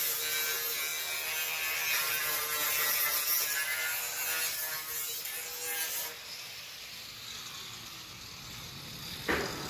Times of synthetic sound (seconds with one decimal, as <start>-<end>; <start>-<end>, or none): none